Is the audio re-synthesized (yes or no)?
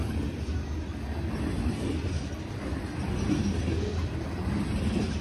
no